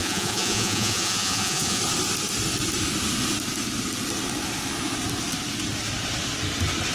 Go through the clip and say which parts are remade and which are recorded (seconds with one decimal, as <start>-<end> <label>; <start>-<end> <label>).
0.0-1.8 remade; 1.8-6.9 recorded